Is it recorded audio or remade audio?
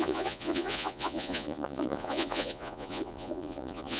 remade